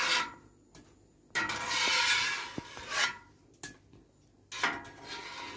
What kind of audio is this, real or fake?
real